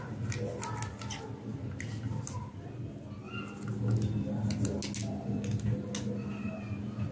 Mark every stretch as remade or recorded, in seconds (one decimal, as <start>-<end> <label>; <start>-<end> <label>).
0.0-7.1 recorded